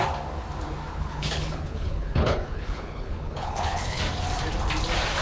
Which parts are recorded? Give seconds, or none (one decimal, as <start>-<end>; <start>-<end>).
0.0-0.9; 4.0-5.2